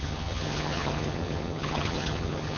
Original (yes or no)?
no